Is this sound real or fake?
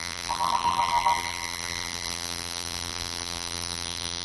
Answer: fake